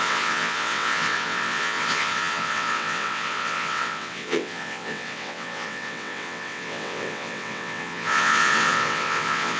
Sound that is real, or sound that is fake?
fake